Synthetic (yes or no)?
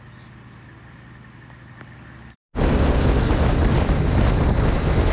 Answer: no